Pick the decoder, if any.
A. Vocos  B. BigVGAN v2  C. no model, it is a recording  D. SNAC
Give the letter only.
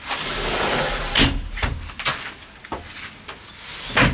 C